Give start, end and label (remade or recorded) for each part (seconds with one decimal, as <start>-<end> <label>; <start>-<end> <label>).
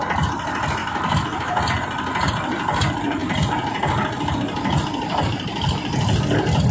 0.0-0.8 recorded; 0.8-1.6 remade; 1.6-6.7 recorded